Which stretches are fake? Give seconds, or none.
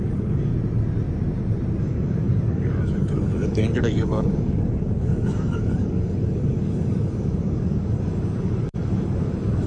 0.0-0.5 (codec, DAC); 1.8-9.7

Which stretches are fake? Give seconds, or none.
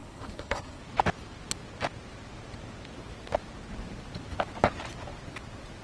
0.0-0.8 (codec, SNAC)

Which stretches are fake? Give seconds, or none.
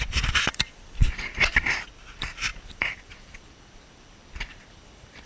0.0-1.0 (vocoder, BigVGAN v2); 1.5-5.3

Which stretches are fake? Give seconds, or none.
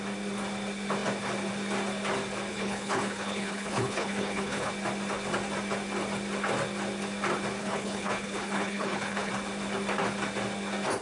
2.5-4.7 (codec, HILCodec); 7.6-9.3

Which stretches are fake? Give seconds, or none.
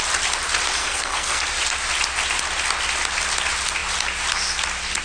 0.8-1.4 (codec, SNAC)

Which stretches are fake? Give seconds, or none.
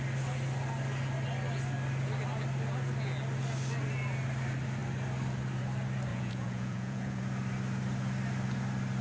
6.1-7.2 (vocoder, Vocos)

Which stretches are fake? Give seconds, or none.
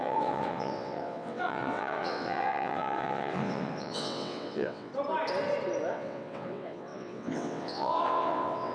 0.0-4.9 (vocoder, WaveNeXt); 5.9-8.7